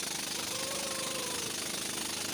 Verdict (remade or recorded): recorded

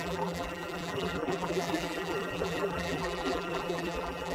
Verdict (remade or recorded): remade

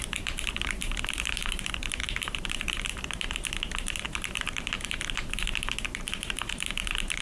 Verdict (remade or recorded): remade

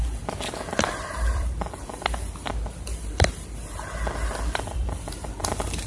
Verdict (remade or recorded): remade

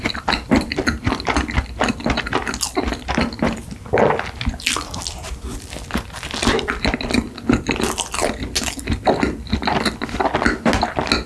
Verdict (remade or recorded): recorded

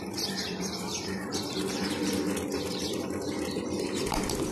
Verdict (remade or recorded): remade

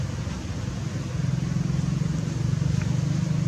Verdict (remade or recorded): recorded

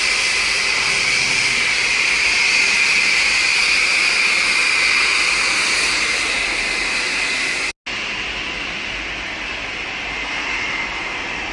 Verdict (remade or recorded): recorded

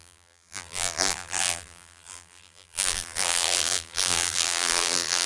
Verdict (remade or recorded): remade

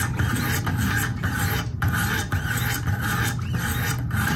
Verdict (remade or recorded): recorded